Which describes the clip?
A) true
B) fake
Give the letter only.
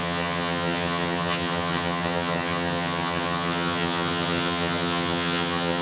B